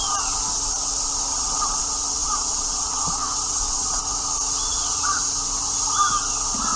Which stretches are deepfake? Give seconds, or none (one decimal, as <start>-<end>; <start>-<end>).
1.3-1.8; 2.2-4.0; 4.7-5.2